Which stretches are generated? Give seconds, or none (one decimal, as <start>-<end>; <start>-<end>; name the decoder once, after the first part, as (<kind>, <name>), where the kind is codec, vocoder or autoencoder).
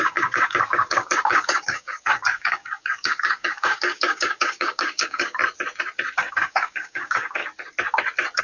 0.0-5.4 (codec, DAC); 6.3-7.4